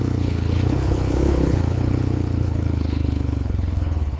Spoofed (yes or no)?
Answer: yes